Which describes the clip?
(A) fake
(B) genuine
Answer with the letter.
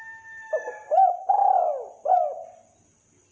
B